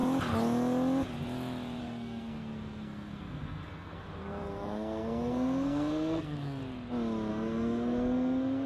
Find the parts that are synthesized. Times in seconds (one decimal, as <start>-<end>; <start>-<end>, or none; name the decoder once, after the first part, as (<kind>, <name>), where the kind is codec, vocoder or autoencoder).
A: 1.8-6.6 (codec, SNAC); 7.3-8.7